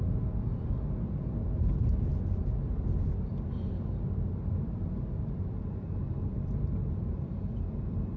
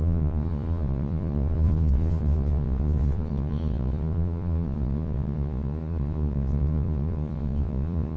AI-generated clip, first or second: second